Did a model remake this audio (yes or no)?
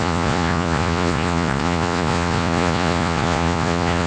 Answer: yes